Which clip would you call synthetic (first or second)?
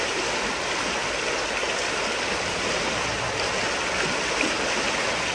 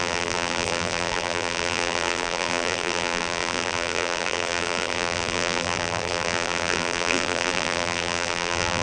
second